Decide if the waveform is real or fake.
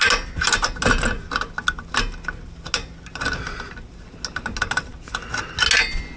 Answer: real